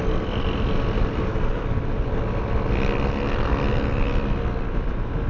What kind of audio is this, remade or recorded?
recorded